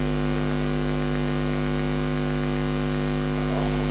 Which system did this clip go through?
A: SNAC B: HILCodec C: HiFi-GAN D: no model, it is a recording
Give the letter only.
D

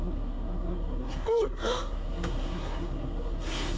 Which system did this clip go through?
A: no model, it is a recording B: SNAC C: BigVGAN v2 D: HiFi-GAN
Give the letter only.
B